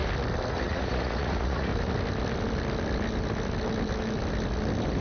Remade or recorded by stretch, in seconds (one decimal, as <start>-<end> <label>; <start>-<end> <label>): 0.0-0.5 recorded; 0.5-1.7 remade; 1.7-5.0 recorded